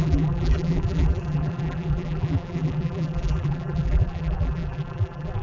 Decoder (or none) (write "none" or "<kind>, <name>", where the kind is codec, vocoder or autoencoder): vocoder, BigVGAN v2